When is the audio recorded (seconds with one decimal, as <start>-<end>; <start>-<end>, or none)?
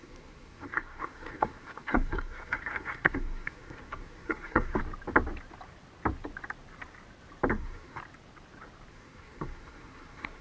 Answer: 4.8-7.5; 8.0-8.9